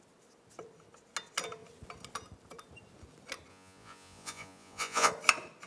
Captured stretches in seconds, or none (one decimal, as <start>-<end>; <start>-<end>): 0.0-3.5; 5.1-5.7